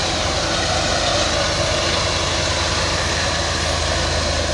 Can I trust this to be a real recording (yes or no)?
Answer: yes